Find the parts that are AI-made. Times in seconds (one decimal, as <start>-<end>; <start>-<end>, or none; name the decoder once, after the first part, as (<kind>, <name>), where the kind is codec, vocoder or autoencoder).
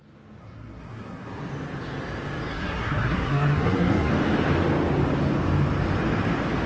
0.4-1.5 (codec, SNAC); 2.5-4.1